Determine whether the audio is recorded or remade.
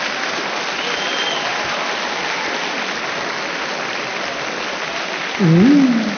recorded